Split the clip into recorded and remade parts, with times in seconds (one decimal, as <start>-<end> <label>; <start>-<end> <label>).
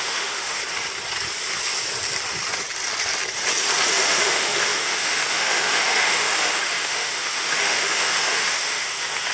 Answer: 0.0-0.6 remade; 0.6-3.9 recorded; 3.9-9.3 remade